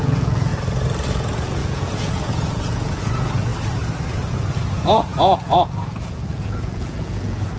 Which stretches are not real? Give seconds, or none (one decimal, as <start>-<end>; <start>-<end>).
0.0-0.5; 1.1-3.5; 4.1-7.6